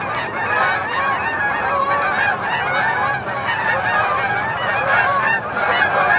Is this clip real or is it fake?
real